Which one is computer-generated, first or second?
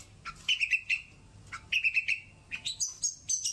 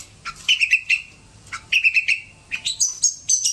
second